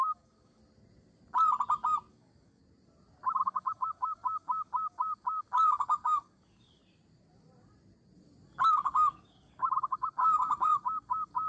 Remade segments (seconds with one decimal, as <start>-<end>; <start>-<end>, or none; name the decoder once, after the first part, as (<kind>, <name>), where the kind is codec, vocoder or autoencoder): 0.0-0.6 (codec, DAC); 2.1-2.6; 3.3-6.8; 8.7-11.5